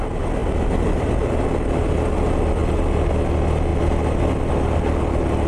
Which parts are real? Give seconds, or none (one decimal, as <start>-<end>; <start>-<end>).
0.0-0.4; 1.5-5.5